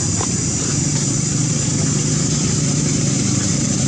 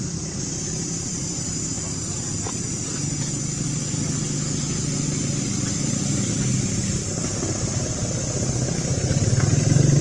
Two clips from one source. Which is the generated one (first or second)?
first